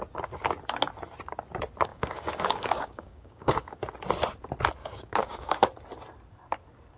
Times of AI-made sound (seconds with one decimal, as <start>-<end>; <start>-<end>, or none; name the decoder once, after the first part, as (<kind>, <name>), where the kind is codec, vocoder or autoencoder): 1.9-3.7 (codec, DAC); 4.8-5.5